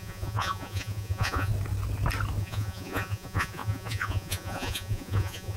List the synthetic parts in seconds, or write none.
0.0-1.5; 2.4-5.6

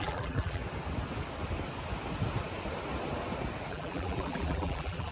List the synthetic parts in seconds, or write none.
0.0-0.6; 3.7-5.1

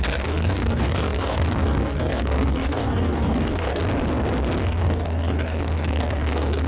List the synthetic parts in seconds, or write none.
0.0-3.8; 4.6-6.7

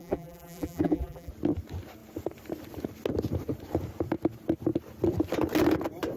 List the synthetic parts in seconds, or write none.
0.0-1.3

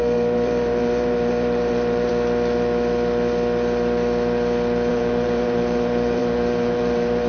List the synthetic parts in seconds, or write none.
0.0-2.1; 4.9-7.3

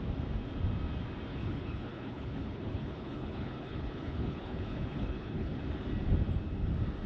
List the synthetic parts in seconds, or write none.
1.3-5.6

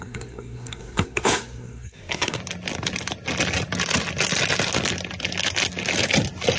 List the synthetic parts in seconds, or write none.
0.0-2.4

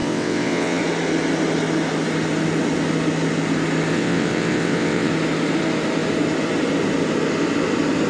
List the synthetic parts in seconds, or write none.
0.0-0.8; 3.9-5.1